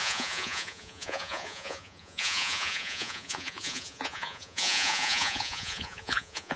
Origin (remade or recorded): remade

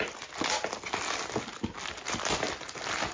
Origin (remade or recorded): recorded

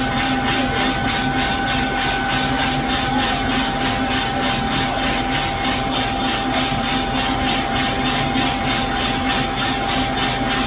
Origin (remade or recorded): recorded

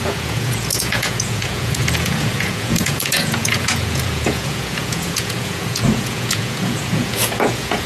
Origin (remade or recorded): remade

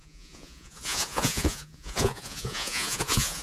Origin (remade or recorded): remade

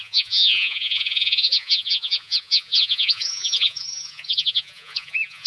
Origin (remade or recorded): remade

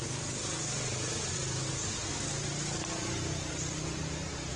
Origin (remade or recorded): recorded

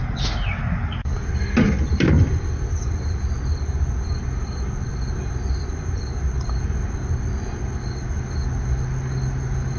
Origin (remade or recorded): recorded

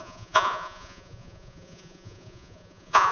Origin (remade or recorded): remade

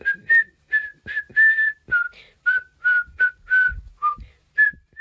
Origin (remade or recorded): recorded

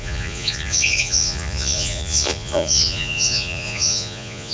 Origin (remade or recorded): remade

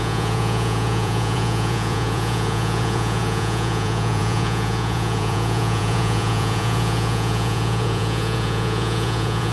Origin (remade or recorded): remade